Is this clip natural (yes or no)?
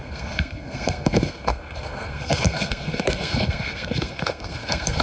no